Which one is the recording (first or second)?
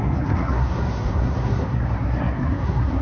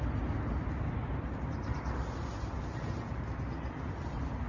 second